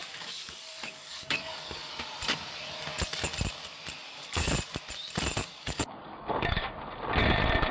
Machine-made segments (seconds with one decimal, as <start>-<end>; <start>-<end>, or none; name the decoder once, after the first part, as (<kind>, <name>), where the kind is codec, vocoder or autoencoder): 0.0-1.9 (codec, DAC); 4.0-4.5; 5.4-6.7